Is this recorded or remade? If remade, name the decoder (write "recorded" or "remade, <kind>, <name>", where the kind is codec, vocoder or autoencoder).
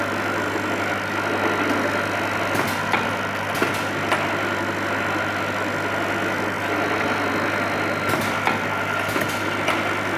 recorded